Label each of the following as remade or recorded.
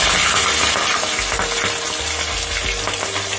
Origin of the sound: recorded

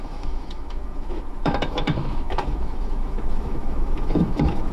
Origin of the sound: remade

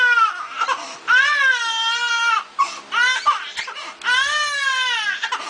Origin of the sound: recorded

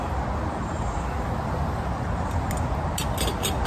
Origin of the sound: recorded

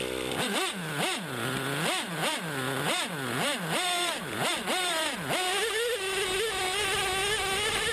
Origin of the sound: recorded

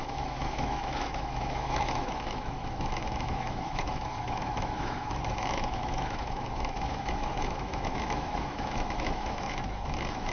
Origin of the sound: remade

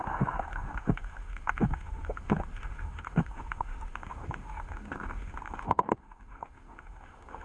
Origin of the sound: remade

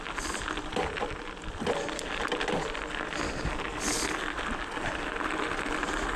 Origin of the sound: recorded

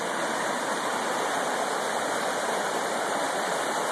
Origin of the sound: recorded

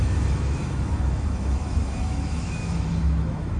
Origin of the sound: remade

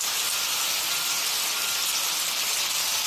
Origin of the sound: recorded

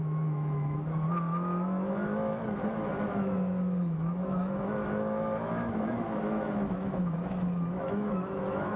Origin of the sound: remade